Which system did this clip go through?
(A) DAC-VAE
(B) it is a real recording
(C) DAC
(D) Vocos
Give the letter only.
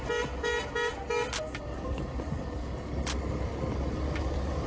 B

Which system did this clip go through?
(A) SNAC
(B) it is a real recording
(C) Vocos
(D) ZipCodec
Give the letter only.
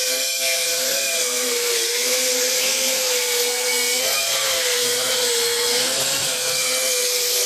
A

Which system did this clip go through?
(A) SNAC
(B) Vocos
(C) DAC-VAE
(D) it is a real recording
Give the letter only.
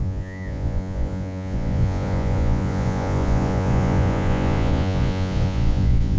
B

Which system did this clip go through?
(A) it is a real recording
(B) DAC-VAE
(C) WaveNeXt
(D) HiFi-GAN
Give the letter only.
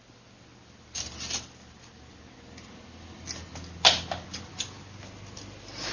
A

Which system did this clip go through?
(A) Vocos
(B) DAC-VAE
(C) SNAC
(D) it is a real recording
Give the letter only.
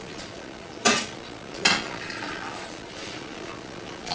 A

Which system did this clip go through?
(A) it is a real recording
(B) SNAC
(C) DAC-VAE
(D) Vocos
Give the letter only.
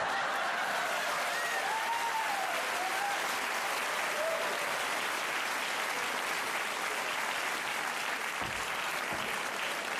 A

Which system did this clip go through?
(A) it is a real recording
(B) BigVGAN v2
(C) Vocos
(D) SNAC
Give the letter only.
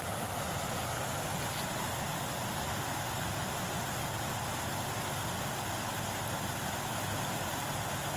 A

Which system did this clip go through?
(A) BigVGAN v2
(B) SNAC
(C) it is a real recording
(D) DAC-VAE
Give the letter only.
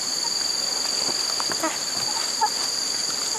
C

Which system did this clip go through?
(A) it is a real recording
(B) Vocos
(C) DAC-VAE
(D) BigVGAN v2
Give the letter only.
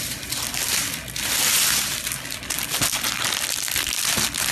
A